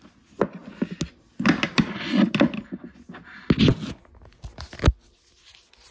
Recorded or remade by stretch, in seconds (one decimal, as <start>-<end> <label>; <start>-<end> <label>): 0.0-5.9 recorded